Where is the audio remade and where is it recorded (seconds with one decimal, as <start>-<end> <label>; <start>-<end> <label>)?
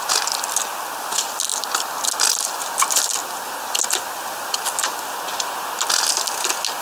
0.0-6.8 recorded